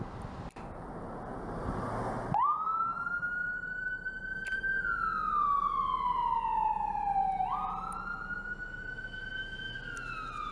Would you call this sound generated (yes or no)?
no